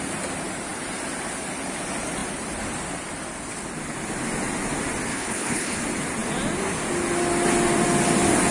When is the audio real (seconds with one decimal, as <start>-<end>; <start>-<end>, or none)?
0.0-5.1; 5.8-8.5